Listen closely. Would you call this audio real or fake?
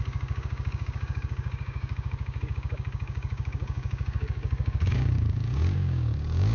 fake